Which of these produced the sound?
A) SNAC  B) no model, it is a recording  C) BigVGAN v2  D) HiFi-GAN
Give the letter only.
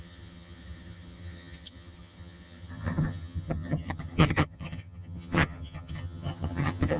D